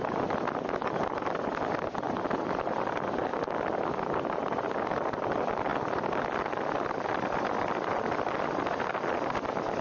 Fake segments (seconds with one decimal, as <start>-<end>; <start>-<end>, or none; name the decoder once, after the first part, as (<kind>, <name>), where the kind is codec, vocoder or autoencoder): none